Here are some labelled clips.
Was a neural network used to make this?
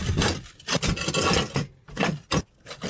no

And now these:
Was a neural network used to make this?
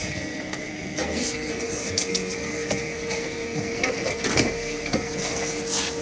yes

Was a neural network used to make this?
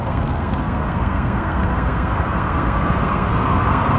yes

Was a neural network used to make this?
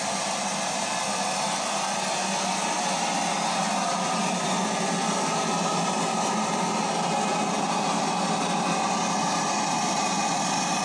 no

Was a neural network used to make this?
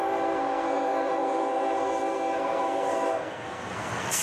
yes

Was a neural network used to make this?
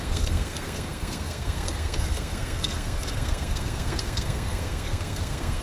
yes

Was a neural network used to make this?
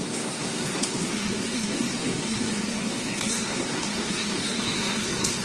yes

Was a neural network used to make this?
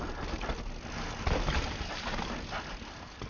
no